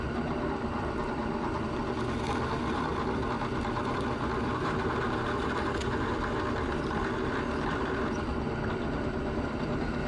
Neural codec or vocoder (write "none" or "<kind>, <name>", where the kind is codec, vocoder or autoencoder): none